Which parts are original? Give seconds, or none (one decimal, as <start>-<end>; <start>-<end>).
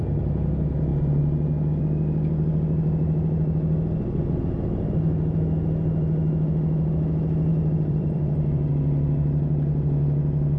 0.0-7.5; 8.7-10.6